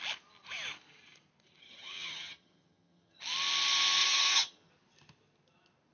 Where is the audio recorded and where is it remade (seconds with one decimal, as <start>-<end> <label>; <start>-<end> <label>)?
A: 0.0-1.6 recorded; 1.6-3.2 remade; 3.2-4.0 recorded; 4.0-4.7 remade; 4.7-5.9 recorded